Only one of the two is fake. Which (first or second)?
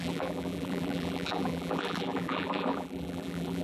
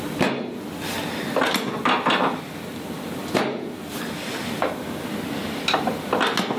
first